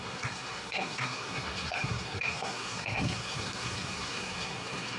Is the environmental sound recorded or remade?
remade